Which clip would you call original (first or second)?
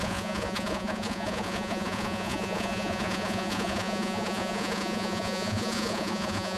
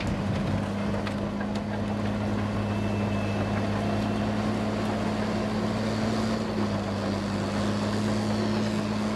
second